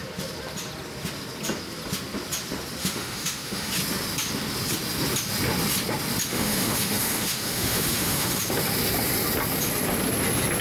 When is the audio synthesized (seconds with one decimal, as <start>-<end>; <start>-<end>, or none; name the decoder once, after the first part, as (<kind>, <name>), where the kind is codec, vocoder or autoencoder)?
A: 2.8-3.7 (autoencoder, DAC-VAE); 6.3-8.4